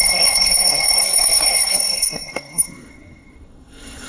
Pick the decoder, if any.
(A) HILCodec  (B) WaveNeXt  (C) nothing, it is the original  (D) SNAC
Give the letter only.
D